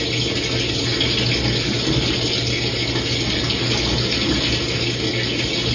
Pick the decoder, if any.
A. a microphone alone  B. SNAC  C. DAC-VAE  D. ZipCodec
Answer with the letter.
A